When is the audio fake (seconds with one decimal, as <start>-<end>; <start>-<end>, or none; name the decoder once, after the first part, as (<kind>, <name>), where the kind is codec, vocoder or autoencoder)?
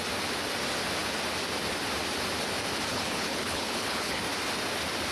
2.9-4.2 (codec, HILCodec)